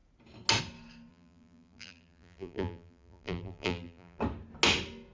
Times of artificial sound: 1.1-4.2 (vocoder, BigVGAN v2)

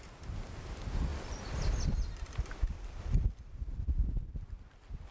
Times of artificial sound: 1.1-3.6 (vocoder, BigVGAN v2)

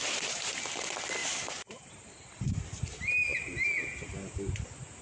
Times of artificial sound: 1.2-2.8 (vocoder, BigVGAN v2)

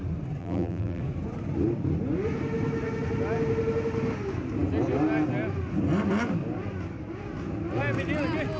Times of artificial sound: 0.4-1.0 (vocoder, BigVGAN v2)